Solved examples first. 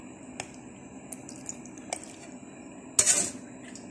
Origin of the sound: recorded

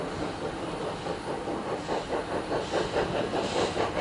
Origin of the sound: recorded